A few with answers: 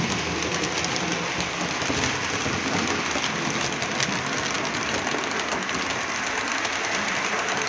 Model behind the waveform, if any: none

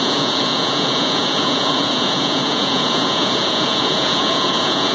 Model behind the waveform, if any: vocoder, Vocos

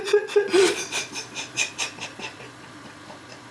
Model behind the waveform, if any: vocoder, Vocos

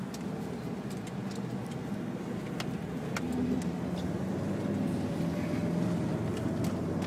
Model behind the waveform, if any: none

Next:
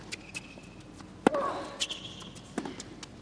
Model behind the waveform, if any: none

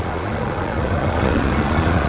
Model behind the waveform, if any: vocoder, Vocos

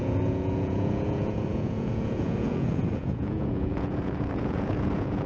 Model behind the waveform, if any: vocoder, Vocos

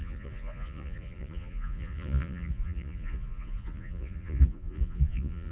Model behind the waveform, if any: vocoder, Vocos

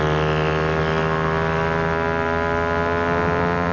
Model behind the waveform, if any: none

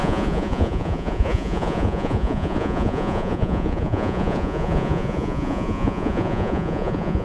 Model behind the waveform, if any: vocoder, Vocos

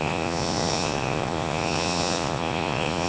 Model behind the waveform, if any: vocoder, Vocos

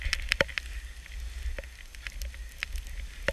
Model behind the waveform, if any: none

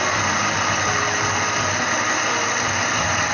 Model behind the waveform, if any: none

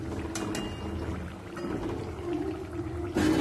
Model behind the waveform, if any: none